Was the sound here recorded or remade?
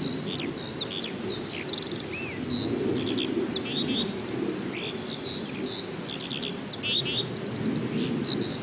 recorded